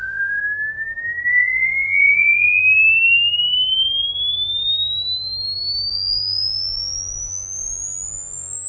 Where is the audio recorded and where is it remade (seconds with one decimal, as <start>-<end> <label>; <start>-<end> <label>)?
0.0-0.4 remade; 0.4-1.3 recorded; 1.3-2.6 remade; 2.6-5.9 recorded; 5.9-8.7 remade